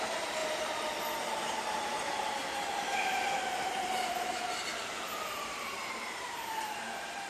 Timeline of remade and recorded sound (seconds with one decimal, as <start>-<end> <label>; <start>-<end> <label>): 0.0-0.4 remade; 0.4-1.2 recorded; 1.2-2.1 remade; 2.1-3.0 recorded; 3.0-4.7 remade; 4.7-5.3 recorded; 5.3-7.3 remade